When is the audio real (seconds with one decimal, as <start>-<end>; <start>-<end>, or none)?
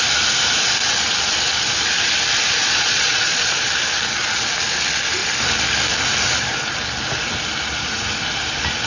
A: 0.0-2.6; 3.7-8.9